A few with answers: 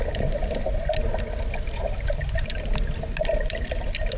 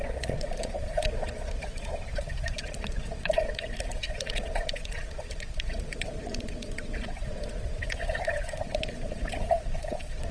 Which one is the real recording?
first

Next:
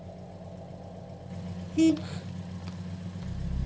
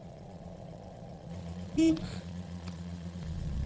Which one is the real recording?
first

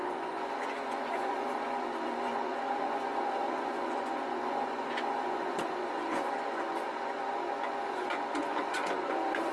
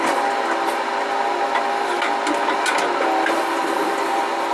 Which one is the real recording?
second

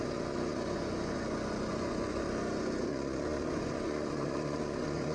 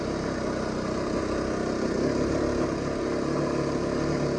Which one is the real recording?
second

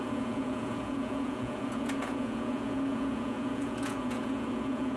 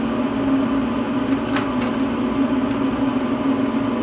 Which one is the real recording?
second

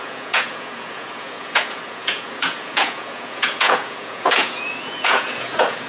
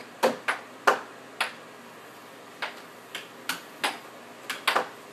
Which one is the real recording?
second